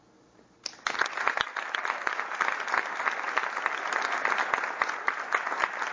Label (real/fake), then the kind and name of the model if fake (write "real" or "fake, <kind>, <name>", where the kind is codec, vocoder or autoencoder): real